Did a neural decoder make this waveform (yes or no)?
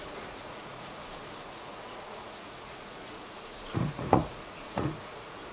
yes